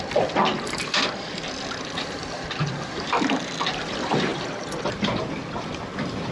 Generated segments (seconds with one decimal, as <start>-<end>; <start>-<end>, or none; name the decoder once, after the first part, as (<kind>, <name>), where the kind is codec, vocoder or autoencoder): 0.0-6.3 (vocoder, BigVGAN v2)